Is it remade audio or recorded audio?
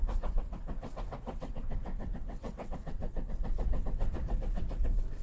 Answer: remade